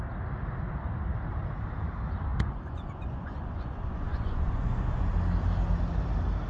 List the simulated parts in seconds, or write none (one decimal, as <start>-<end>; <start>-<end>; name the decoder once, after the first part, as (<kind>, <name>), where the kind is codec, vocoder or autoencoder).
2.3-5.1 (vocoder, Vocos)